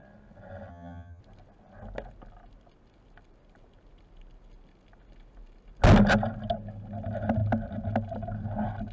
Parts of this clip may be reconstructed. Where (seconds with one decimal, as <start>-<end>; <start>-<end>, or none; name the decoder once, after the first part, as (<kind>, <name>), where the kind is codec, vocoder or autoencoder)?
0.7-1.2 (vocoder, HiFi-GAN)